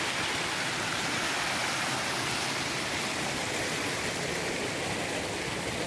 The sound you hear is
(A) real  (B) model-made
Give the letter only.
A